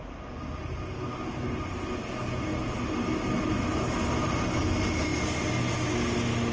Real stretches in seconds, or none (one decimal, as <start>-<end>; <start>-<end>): 0.0-6.5